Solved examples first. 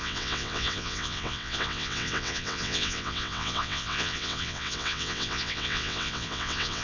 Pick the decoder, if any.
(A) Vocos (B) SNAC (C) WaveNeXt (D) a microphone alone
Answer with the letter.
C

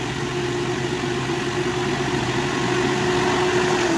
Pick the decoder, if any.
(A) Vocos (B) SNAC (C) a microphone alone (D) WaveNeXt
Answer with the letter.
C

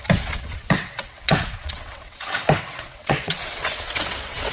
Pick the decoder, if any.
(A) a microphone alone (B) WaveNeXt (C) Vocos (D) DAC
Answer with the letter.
B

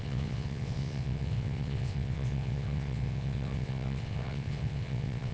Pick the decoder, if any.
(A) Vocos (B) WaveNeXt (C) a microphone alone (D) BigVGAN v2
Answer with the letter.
B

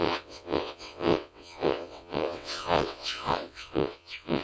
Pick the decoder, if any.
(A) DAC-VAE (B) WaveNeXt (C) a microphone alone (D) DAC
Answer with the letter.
B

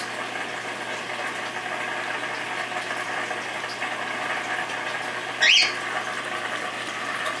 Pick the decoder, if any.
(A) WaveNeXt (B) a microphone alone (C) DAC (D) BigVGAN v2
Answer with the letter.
B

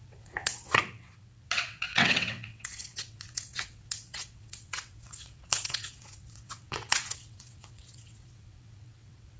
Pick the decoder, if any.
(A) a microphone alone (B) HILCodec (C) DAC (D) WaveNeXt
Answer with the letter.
D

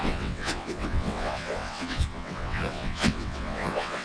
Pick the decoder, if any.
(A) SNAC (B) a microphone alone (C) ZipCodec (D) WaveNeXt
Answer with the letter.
D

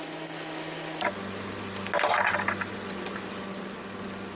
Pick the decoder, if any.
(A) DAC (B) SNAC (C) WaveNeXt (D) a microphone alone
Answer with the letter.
D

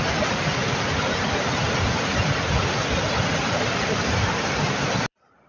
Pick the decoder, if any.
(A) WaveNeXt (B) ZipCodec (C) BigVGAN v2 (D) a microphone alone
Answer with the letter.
D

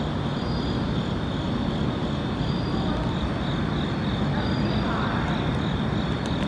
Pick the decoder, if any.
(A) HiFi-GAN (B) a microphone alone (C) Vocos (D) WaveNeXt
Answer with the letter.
B